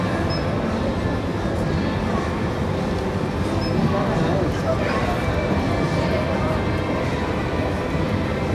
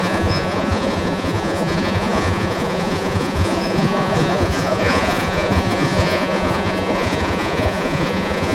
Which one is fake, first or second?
second